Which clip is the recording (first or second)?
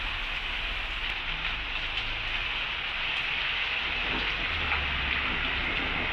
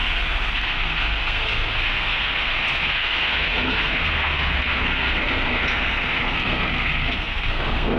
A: first